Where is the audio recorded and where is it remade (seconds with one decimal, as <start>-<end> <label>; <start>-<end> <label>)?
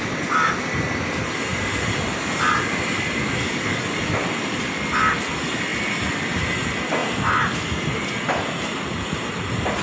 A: 0.0-9.8 recorded